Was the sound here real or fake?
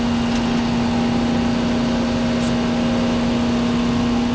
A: real